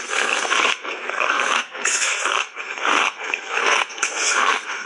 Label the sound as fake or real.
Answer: fake